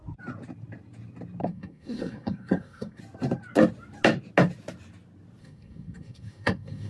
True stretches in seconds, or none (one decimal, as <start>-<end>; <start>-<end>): 0.0-1.4; 3.0-5.4